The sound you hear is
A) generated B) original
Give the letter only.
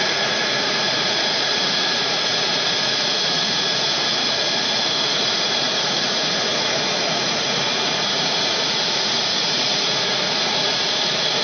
A